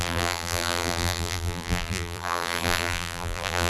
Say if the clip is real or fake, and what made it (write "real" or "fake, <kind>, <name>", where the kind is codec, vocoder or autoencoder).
fake, vocoder, BigVGAN v2